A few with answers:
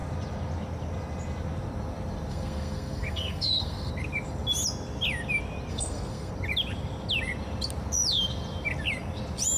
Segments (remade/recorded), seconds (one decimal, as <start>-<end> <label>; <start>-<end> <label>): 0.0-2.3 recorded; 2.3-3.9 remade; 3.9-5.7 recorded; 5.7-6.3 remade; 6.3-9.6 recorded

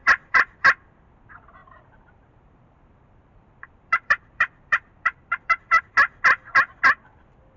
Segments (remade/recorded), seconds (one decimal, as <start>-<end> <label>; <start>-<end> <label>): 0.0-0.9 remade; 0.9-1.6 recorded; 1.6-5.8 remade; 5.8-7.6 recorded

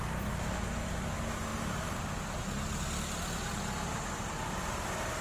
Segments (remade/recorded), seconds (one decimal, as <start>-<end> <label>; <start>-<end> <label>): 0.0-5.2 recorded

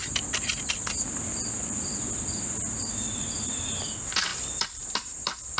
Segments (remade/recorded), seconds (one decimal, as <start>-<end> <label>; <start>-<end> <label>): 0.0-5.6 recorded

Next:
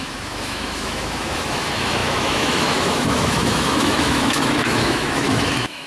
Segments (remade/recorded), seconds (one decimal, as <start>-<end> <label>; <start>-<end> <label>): 0.0-5.9 remade